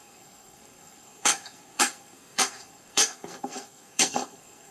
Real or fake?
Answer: fake